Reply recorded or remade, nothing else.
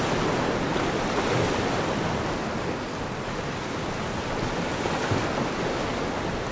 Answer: recorded